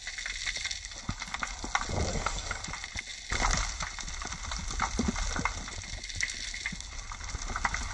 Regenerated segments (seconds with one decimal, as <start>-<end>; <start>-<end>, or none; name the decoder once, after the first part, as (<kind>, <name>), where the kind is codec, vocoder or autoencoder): 2.1-2.6 (codec, SNAC)